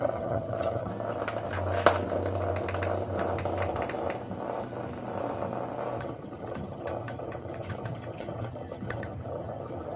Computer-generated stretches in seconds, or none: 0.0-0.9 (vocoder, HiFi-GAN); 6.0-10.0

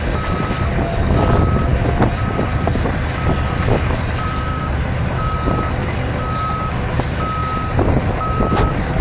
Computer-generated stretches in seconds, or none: 1.7-4.6 (vocoder, BigVGAN v2); 7.4-7.9